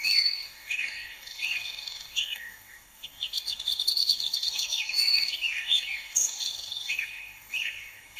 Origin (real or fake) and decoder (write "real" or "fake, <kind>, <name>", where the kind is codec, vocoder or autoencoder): fake, codec, DAC